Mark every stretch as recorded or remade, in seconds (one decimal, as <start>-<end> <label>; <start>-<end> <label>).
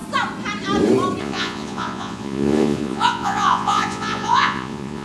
0.0-1.2 recorded; 1.2-5.0 remade